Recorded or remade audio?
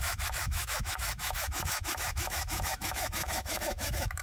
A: remade